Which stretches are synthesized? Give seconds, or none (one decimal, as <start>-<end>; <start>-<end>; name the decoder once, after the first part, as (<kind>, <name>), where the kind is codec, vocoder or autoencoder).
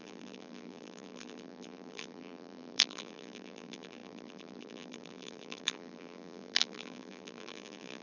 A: 0.0-8.0 (vocoder, BigVGAN v2)